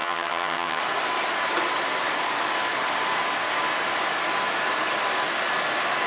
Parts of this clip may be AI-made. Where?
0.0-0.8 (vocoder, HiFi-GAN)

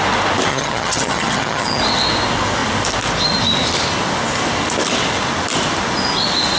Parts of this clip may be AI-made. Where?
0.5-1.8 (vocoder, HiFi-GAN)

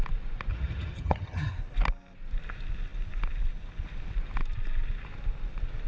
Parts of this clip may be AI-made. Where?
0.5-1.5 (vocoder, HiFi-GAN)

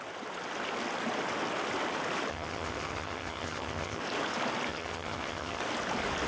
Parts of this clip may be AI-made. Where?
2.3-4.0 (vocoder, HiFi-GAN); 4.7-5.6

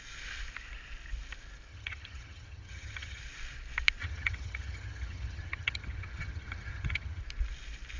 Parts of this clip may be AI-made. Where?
1.7-3.2 (vocoder, HiFi-GAN); 4.0-7.2